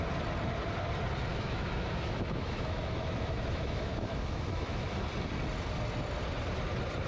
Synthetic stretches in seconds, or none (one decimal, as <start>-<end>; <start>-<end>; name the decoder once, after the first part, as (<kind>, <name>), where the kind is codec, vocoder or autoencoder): 1.3-5.0 (autoencoder, DAC-VAE)